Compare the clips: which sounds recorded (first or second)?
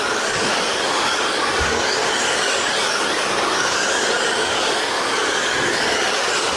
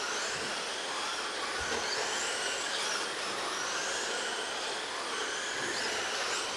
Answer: second